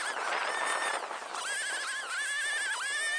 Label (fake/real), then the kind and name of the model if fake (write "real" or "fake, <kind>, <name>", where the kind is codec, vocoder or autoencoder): real